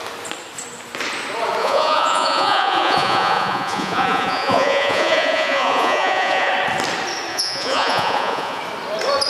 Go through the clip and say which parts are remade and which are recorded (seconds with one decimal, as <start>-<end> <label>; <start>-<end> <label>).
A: 0.0-1.6 recorded; 1.6-6.5 remade; 6.5-7.3 recorded; 7.3-8.6 remade; 8.6-9.3 recorded

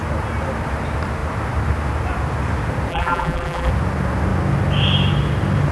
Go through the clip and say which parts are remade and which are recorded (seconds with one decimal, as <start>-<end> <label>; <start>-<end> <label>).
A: 0.0-2.9 recorded; 2.9-3.7 remade; 3.7-5.7 recorded

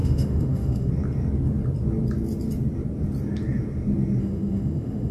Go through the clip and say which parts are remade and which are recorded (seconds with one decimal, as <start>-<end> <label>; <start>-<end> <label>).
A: 0.0-0.9 remade; 0.9-4.2 recorded; 4.2-5.1 remade

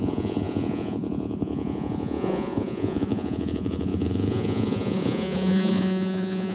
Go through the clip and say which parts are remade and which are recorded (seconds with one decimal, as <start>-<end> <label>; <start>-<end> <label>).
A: 0.0-6.5 remade

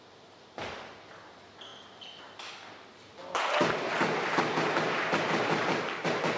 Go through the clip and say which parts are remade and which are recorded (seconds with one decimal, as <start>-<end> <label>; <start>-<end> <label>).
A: 0.0-6.4 recorded

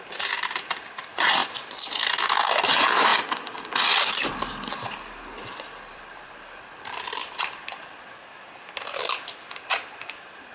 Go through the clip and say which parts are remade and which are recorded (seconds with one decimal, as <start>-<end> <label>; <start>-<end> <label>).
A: 0.0-1.4 recorded; 1.4-2.0 remade; 2.0-3.1 recorded; 3.1-4.3 remade; 4.3-5.9 recorded; 5.9-8.3 remade; 8.3-10.5 recorded

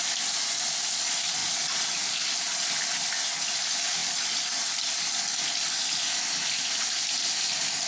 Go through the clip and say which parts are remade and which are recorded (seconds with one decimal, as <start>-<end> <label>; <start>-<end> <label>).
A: 0.0-7.9 recorded

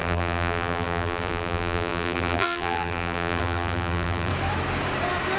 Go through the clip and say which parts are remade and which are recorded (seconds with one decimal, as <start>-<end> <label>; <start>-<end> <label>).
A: 0.0-4.3 remade; 4.3-5.4 recorded